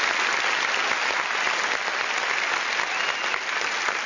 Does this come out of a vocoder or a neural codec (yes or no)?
no